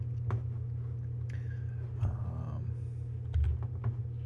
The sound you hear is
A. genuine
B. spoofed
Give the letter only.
A